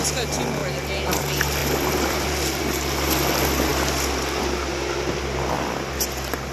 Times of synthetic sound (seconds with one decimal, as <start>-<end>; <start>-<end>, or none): 1.6-2.6